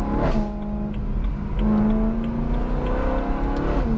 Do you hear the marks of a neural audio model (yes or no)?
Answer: no